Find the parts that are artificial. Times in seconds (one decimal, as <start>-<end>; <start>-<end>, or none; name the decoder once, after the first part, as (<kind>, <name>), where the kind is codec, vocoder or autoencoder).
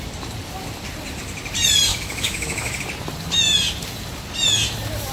1.9-2.8 (autoencoder, DAC-VAE)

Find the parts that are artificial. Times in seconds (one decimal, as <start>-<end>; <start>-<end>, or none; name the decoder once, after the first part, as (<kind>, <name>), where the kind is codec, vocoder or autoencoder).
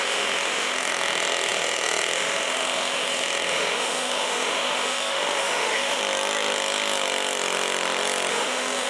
0.0-6.0 (autoencoder, DAC-VAE); 8.3-8.9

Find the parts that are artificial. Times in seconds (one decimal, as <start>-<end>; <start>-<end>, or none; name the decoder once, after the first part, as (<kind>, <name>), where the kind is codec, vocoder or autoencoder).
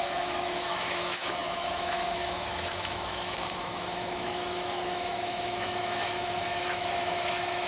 0.0-7.7 (autoencoder, DAC-VAE)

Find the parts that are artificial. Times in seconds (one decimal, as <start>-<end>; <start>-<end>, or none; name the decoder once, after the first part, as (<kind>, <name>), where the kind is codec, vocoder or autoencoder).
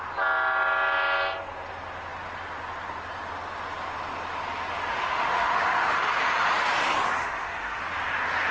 4.9-6.2 (autoencoder, DAC-VAE); 7.2-7.8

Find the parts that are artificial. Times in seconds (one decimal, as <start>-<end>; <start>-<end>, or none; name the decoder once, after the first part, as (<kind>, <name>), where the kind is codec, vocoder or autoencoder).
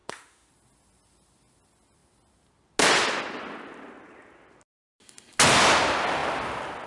0.0-0.5 (autoencoder, DAC-VAE)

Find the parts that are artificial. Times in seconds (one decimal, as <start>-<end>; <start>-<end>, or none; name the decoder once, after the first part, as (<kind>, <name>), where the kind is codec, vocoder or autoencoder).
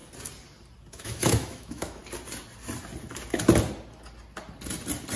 0.9-2.0 (autoencoder, DAC-VAE)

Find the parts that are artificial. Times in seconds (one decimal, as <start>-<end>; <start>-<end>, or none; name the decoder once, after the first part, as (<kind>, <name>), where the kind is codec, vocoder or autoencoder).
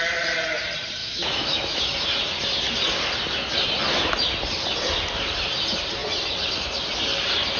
1.0-1.8 (autoencoder, DAC-VAE)